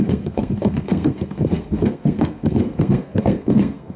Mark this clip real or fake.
fake